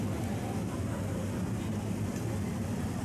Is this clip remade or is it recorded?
recorded